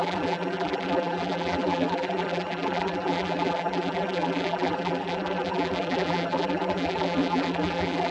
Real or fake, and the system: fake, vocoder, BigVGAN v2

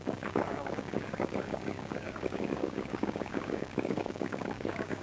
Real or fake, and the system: fake, codec, DAC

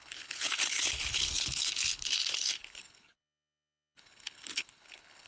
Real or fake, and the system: fake, codec, HILCodec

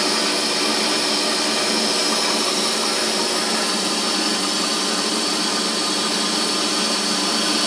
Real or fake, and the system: real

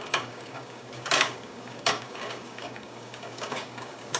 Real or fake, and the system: fake, codec, DAC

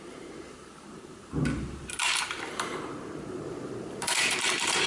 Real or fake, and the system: fake, vocoder, BigVGAN v2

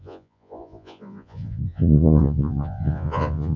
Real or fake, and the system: fake, vocoder, Vocos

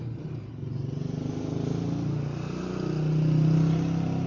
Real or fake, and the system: real